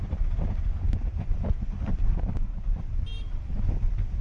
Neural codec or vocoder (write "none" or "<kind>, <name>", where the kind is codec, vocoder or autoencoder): none